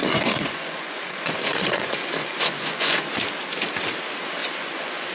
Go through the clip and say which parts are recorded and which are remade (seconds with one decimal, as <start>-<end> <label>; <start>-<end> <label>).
0.0-3.1 remade; 3.1-4.4 recorded; 4.4-5.1 remade